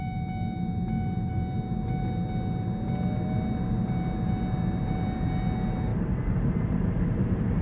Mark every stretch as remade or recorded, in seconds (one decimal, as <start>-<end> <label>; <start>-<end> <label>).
0.0-5.9 recorded; 5.9-7.6 remade